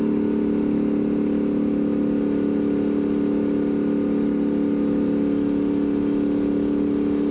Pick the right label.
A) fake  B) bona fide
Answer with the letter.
B